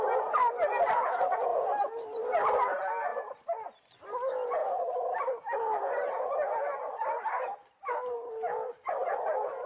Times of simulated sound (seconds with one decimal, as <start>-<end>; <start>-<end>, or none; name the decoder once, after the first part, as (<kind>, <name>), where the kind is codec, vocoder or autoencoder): none